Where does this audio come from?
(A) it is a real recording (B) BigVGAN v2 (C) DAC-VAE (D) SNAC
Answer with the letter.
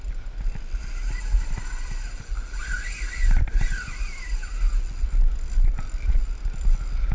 A